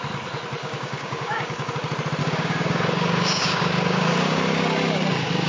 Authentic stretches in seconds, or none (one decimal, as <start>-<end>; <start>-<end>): 0.0-0.6; 1.7-2.2